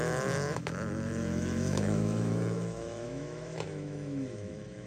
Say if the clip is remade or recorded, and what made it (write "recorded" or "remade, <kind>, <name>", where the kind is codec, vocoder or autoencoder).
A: remade, autoencoder, DAC-VAE